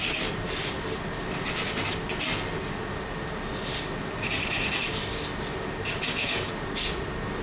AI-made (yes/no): no